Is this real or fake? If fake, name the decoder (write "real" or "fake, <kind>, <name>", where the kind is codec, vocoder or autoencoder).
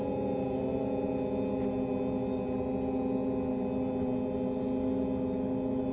real